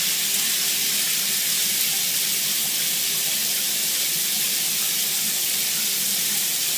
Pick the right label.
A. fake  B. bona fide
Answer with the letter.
B